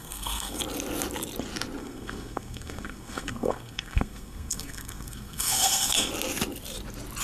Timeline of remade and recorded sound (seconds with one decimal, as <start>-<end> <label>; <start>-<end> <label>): 0.0-0.6 remade; 0.6-1.8 recorded; 1.8-6.1 remade; 6.1-7.2 recorded